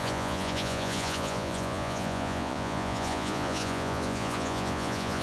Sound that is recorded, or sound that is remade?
remade